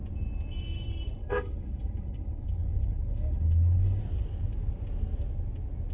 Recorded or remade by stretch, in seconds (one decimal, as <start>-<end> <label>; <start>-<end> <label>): 0.0-1.2 recorded; 1.2-4.0 remade; 4.0-5.9 recorded